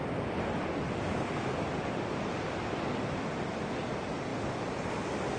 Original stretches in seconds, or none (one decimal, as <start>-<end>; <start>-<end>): 0.0-5.4